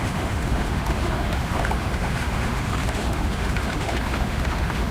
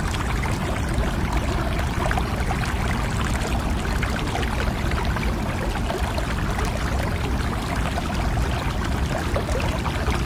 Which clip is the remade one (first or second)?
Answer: first